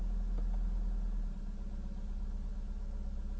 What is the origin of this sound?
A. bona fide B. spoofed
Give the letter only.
A